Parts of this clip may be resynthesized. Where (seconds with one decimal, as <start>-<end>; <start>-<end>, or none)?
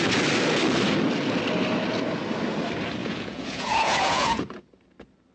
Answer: 3.0-4.6